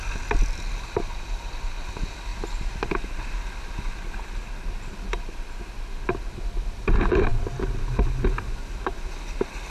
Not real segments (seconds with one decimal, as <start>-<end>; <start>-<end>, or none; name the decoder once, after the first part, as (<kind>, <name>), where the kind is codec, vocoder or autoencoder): none